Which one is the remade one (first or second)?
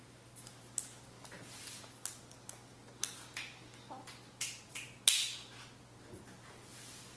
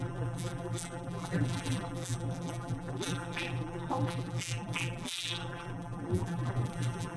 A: second